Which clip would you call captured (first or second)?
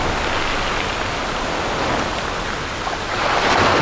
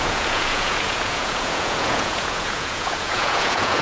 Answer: first